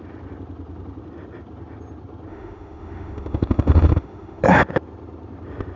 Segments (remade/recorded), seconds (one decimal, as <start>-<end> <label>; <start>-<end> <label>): 0.0-2.3 recorded; 2.3-4.4 remade; 4.4-5.8 recorded

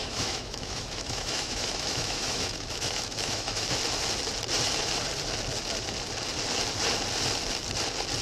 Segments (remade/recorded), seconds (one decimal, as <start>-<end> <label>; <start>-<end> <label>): 0.0-3.7 remade; 3.7-8.2 recorded

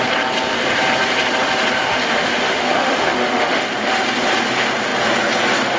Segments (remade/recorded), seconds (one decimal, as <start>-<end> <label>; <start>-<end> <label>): 0.0-1.8 recorded; 1.8-3.6 remade; 3.6-5.8 recorded

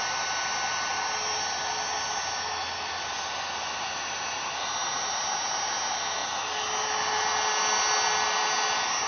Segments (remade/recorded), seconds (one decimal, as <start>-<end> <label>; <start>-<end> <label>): 0.0-9.1 recorded

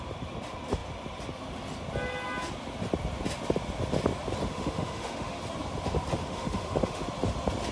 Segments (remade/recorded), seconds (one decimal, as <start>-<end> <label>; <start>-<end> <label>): 0.0-4.5 recorded; 4.5-5.4 remade; 5.4-6.2 recorded; 6.2-7.0 remade; 7.0-7.7 recorded